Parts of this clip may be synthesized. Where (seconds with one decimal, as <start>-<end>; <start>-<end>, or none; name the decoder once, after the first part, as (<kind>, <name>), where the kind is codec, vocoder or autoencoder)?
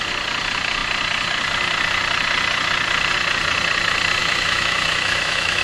4.2-5.6 (autoencoder, DAC-VAE)